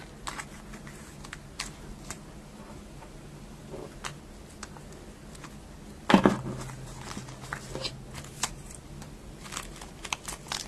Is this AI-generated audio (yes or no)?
no